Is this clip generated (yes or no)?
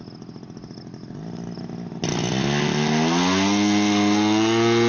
no